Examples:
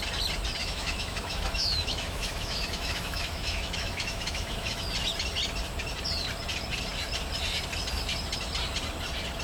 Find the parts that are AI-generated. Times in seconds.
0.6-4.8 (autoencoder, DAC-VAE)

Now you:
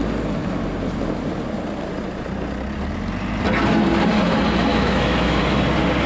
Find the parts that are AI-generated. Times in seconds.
4.7-5.4 (autoencoder, DAC-VAE)